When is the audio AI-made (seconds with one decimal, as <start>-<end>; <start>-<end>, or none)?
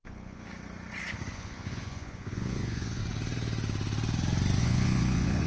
0.0-0.5; 1.3-3.0; 4.6-5.5